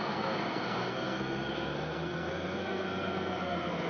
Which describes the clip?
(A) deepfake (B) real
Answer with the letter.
A